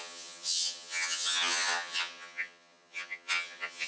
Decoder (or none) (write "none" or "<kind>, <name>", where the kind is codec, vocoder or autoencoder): vocoder, HiFi-GAN